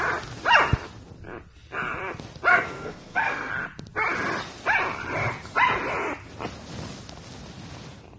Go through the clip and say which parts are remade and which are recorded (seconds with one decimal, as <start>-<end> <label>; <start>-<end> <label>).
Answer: 0.0-2.5 recorded; 2.5-3.5 remade; 3.5-8.2 recorded